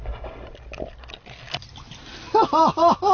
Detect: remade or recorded recorded